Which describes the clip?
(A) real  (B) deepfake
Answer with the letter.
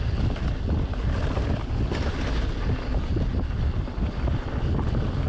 A